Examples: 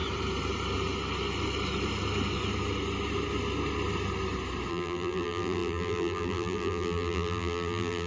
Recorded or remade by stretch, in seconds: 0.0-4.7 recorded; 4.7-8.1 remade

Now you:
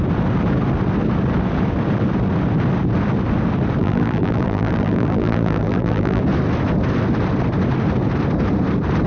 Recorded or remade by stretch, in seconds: 0.0-3.8 recorded; 3.8-6.2 remade; 6.2-9.1 recorded

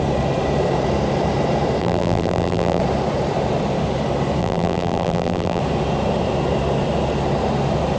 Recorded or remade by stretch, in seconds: 0.0-1.8 recorded; 1.8-2.8 remade; 2.8-4.4 recorded; 4.4-5.6 remade; 5.6-8.0 recorded

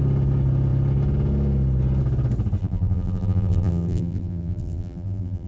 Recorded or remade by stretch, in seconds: 0.0-2.6 recorded; 2.6-5.5 remade

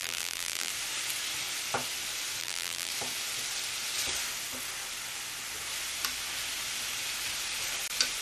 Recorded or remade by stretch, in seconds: 0.0-0.7 remade; 0.7-2.4 recorded; 2.4-2.9 remade; 2.9-8.2 recorded